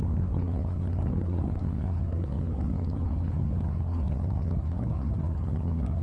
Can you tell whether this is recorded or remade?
remade